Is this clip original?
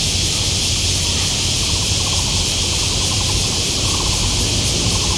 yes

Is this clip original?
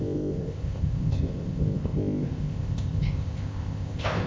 no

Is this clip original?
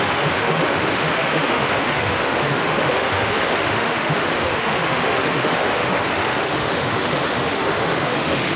no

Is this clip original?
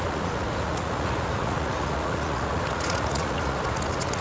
no